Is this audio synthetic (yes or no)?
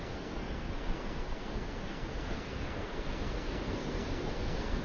yes